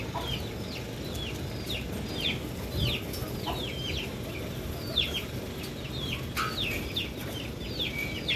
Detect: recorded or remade recorded